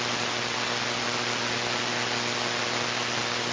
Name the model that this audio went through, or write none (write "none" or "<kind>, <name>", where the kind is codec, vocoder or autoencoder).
none